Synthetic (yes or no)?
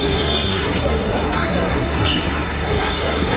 yes